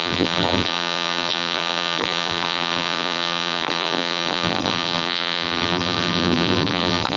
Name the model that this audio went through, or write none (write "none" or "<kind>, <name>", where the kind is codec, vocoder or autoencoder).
vocoder, BigVGAN v2